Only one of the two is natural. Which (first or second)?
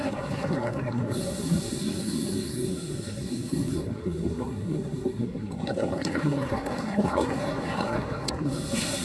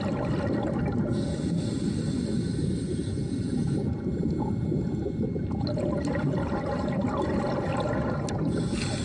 second